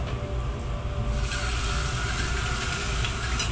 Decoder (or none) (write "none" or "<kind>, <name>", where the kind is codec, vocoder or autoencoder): none